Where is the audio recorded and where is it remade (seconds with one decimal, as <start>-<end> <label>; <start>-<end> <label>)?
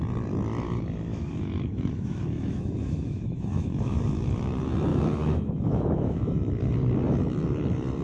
0.0-1.1 recorded; 1.1-4.0 remade; 4.0-4.9 recorded; 4.9-6.6 remade; 6.6-8.0 recorded